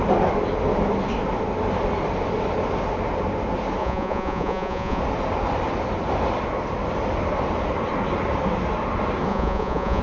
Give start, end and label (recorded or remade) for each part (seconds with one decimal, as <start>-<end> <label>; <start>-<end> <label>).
0.0-3.8 recorded; 3.8-5.0 remade; 5.0-9.3 recorded; 9.3-10.0 remade